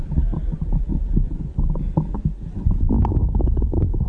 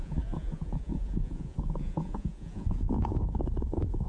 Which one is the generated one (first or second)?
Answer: second